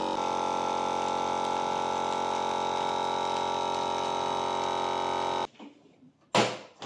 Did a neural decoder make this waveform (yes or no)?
no